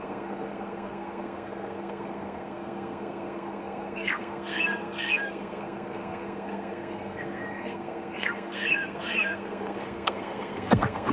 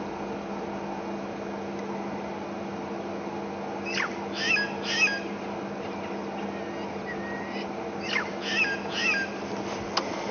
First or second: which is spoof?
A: first